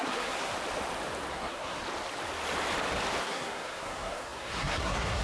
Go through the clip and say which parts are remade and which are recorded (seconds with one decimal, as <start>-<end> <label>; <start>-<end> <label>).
0.0-0.5 remade; 0.5-1.3 recorded; 1.3-1.8 remade; 1.8-3.2 recorded; 3.2-5.2 remade